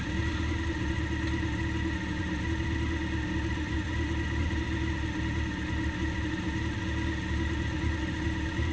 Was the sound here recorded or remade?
recorded